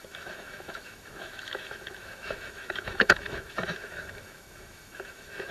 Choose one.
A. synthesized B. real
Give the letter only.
A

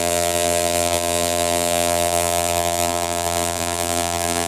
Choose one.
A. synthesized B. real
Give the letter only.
A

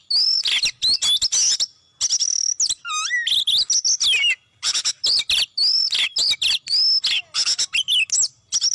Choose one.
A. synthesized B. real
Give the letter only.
B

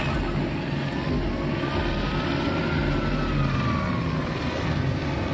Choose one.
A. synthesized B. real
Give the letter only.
B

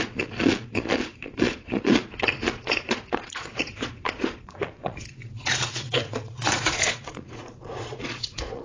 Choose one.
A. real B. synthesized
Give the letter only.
B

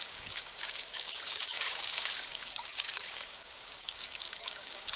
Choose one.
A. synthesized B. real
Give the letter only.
A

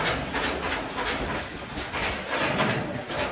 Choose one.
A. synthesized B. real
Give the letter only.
B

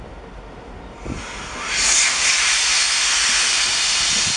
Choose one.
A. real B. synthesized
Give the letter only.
A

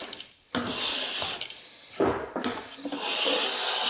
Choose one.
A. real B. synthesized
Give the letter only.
A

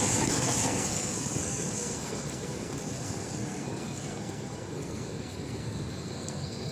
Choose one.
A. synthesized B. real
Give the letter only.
A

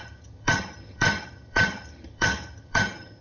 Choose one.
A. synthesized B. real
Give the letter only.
A